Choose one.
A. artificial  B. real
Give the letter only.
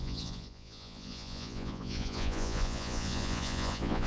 A